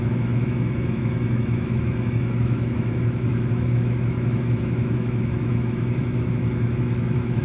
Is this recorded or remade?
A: remade